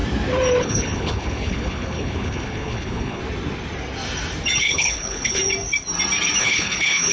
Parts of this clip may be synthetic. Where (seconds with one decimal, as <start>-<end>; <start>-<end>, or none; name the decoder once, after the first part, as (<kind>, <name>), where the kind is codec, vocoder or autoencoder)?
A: 0.6-3.2 (codec, HILCodec); 4.6-5.4; 6.4-7.1